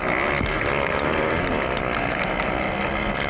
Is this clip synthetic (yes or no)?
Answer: no